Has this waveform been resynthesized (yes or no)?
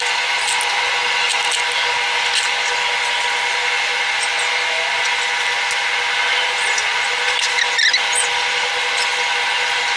no